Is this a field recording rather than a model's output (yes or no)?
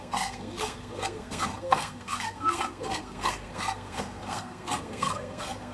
no